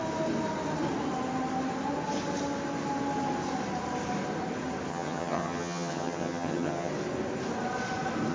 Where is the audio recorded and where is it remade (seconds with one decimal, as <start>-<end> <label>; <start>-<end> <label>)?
0.0-4.9 recorded; 4.9-6.9 remade; 6.9-8.3 recorded

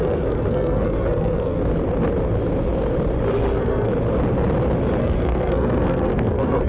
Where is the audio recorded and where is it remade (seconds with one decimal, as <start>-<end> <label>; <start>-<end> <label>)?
0.0-1.6 remade; 1.6-3.5 recorded; 3.5-3.9 remade; 3.9-5.0 recorded; 5.0-6.7 remade

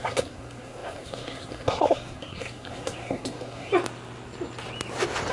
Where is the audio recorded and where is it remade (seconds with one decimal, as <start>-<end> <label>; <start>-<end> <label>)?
0.0-3.7 remade; 3.7-5.3 recorded

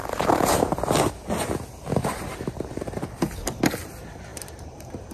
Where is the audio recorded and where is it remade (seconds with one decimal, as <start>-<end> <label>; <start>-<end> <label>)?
0.0-1.1 remade; 1.1-2.0 recorded; 2.0-3.0 remade; 3.0-4.3 recorded; 4.3-5.1 remade

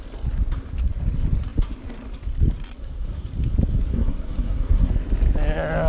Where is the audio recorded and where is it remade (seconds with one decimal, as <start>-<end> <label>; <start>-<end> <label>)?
0.0-2.8 recorded; 2.8-3.3 remade; 3.3-3.9 recorded; 3.9-4.9 remade; 4.9-5.9 recorded

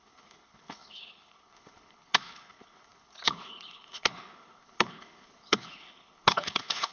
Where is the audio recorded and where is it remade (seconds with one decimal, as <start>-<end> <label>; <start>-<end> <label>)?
0.0-6.9 remade

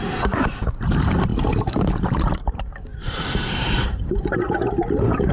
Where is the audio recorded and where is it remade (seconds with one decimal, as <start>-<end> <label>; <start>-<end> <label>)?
0.0-1.3 recorded; 1.3-2.5 remade; 2.5-2.9 recorded; 2.9-5.3 remade